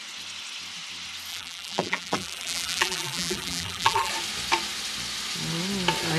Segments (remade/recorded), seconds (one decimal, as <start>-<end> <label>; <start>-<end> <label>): 0.0-1.3 recorded; 1.3-4.1 remade; 4.1-6.2 recorded